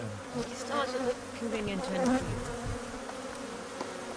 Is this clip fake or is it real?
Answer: real